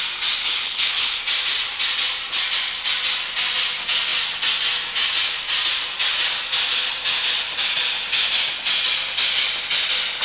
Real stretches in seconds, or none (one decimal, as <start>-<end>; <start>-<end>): 0.0-0.4; 1.2-10.2